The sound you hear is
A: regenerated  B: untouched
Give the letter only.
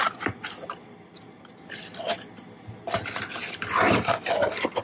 B